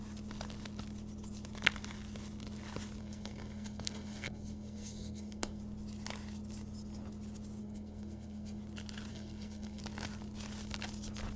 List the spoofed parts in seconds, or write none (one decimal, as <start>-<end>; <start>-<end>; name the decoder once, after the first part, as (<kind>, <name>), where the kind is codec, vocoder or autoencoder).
3.0-5.6 (codec, SNAC); 7.6-8.6; 9.1-9.8